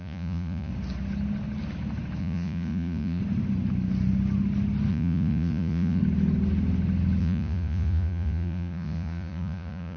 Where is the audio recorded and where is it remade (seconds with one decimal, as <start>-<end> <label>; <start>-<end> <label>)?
0.0-0.7 remade; 0.7-2.2 recorded; 2.2-3.2 remade; 3.2-4.9 recorded; 4.9-6.0 remade; 6.0-7.2 recorded; 7.2-10.0 remade